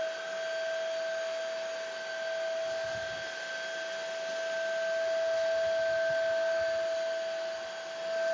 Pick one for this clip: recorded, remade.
recorded